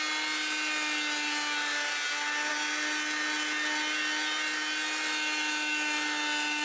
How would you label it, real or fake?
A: real